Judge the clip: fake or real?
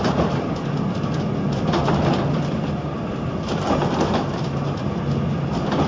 real